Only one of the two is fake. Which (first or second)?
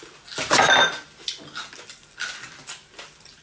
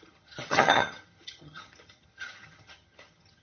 second